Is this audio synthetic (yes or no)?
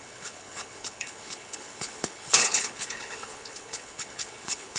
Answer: yes